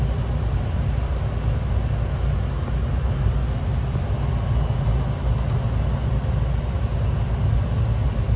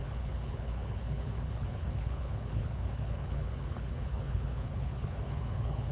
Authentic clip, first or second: first